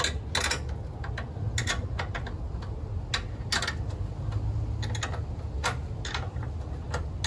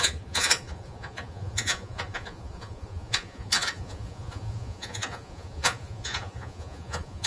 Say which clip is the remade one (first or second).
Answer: second